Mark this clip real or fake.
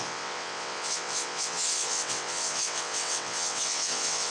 fake